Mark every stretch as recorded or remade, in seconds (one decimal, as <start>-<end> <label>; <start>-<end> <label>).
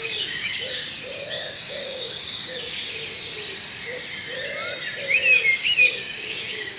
0.0-0.8 remade; 0.8-1.4 recorded; 1.4-2.8 remade; 2.8-5.6 recorded; 5.6-6.8 remade